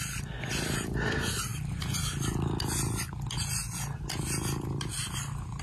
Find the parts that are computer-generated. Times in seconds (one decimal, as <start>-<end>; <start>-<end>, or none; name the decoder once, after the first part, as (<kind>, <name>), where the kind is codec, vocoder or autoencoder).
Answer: none